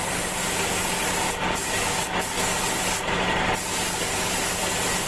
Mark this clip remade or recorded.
recorded